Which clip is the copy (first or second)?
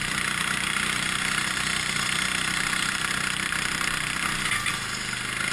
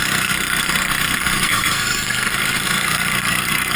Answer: second